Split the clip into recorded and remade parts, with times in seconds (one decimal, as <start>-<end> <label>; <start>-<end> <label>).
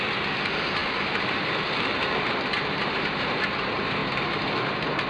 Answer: 0.0-5.1 remade